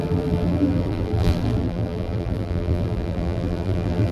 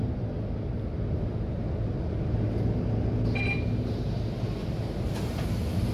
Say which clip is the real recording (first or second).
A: second